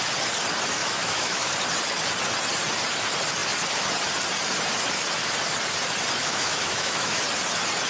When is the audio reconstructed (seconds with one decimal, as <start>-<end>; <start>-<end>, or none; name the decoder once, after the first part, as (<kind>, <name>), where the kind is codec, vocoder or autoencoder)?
0.8-1.5 (autoencoder, DAC-VAE); 6.2-7.2